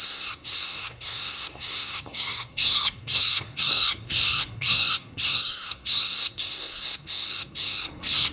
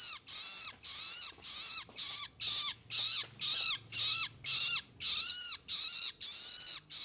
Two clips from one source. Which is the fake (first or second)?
first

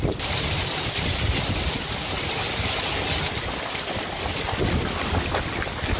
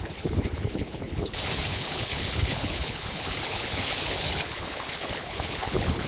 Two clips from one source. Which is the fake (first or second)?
second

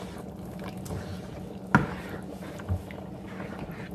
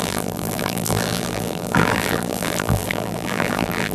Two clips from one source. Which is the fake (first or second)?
second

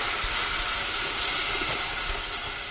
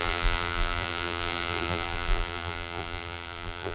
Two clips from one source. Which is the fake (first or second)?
second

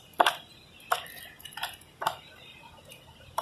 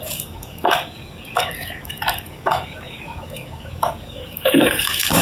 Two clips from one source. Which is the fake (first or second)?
second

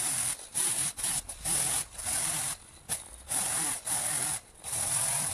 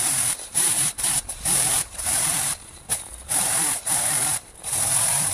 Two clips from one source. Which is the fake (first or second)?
second